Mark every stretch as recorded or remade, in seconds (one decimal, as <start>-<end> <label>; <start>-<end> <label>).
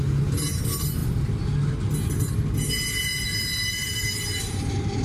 0.0-5.0 recorded